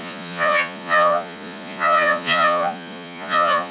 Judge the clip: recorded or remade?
remade